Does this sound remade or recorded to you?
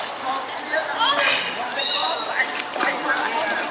recorded